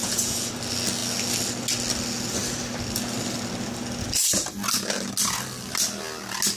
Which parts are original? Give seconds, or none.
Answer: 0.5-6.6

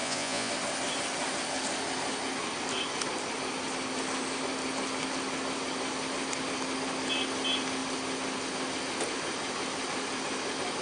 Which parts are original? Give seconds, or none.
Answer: 0.5-10.8

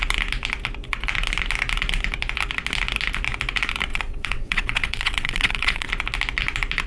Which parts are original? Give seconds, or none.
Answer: 0.0-3.9; 5.9-6.9